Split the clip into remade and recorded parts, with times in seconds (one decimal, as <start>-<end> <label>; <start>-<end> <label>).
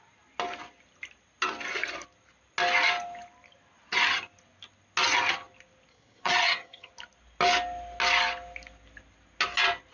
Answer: 0.0-5.9 recorded; 5.9-6.9 remade; 6.9-9.9 recorded